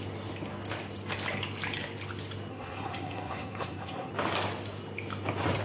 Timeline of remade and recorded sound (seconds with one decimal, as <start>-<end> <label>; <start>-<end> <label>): 0.0-2.5 recorded; 2.5-4.1 remade; 4.1-5.6 recorded